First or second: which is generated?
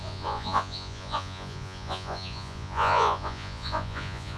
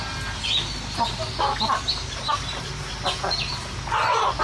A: first